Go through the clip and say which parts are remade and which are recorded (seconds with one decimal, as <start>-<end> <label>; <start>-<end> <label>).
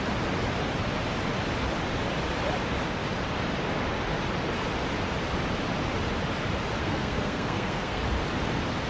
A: 0.0-6.8 recorded; 6.8-8.0 remade; 8.0-8.9 recorded